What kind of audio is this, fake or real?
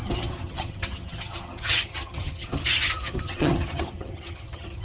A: fake